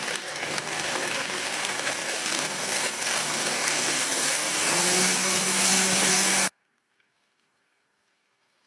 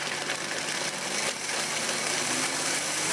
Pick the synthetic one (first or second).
first